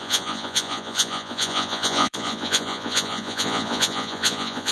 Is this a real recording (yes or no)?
no